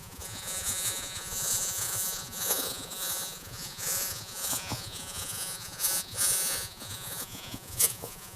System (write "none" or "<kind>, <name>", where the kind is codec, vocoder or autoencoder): vocoder, Vocos